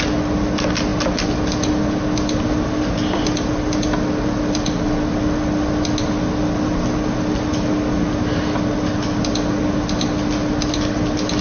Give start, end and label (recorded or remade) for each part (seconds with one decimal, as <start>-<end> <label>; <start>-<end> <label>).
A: 0.0-11.4 recorded